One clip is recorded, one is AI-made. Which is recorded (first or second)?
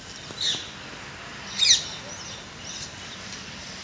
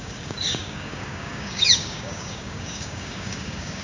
first